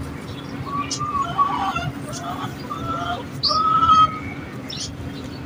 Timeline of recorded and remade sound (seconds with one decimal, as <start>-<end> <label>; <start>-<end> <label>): 0.0-5.5 recorded